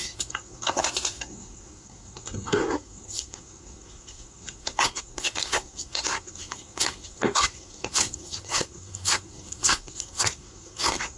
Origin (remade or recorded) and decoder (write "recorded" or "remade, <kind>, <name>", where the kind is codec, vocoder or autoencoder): remade, codec, SNAC